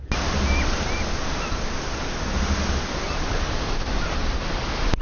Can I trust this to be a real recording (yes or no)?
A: yes